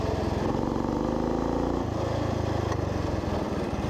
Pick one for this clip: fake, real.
real